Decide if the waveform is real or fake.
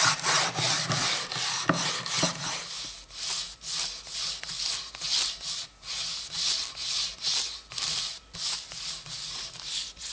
real